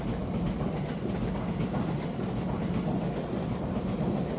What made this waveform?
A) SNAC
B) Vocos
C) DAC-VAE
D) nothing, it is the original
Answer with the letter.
D